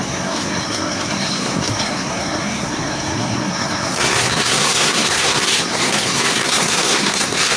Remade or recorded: remade